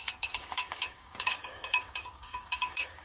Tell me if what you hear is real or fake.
fake